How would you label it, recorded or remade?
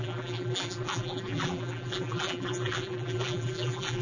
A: remade